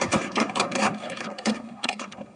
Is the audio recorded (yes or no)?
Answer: no